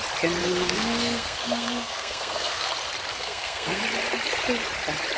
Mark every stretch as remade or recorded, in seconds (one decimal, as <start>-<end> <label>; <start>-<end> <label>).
0.0-0.4 recorded; 0.4-2.7 remade; 2.7-3.1 recorded; 3.1-3.8 remade; 3.8-5.2 recorded